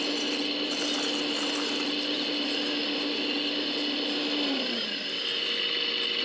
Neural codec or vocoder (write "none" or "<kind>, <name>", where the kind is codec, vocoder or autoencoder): none